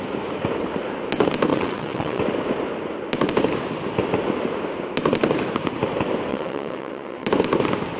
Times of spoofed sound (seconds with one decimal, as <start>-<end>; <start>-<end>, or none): 1.5-2.2; 6.3-7.3